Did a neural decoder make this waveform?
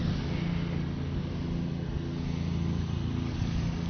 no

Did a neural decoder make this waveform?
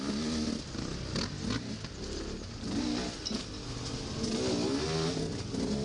no